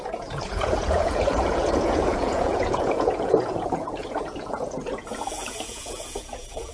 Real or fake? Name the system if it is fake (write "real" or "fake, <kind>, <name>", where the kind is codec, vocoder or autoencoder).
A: fake, vocoder, Vocos